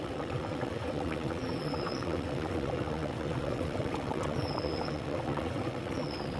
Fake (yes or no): yes